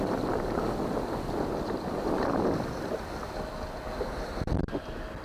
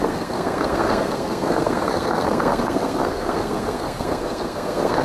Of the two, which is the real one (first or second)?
first